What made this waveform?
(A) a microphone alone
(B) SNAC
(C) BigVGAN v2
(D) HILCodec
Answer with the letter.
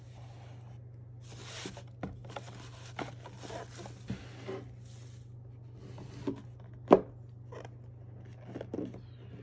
A